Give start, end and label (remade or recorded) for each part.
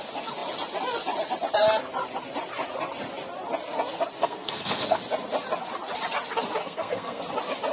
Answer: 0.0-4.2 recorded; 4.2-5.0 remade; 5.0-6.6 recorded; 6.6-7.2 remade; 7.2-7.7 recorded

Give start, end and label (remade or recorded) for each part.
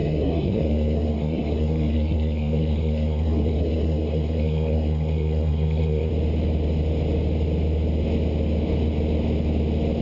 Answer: 0.0-6.1 remade; 6.1-10.0 recorded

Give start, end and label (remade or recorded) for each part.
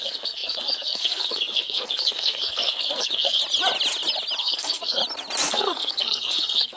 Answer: 0.0-3.4 remade; 3.4-4.4 recorded; 4.4-5.0 remade; 5.0-5.5 recorded; 5.5-6.8 remade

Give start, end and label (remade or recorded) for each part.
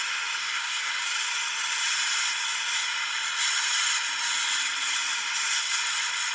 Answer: 0.0-0.4 recorded; 0.4-0.9 remade; 0.9-6.3 recorded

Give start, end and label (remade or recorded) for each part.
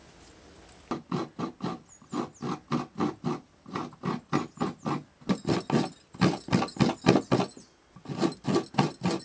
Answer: 0.0-9.2 recorded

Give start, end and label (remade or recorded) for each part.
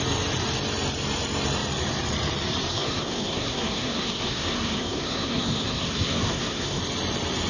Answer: 0.0-2.7 recorded; 2.7-6.8 remade; 6.8-7.5 recorded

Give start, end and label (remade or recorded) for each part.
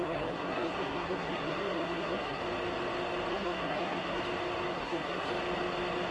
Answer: 0.0-2.4 remade; 2.4-3.3 recorded; 3.3-4.2 remade; 4.2-4.7 recorded; 4.7-5.3 remade; 5.3-6.1 recorded